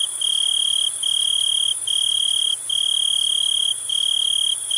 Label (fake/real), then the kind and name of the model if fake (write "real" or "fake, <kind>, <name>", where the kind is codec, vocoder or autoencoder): real